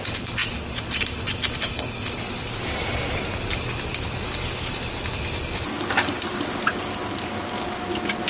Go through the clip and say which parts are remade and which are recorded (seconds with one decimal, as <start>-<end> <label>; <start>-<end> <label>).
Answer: 0.0-8.3 recorded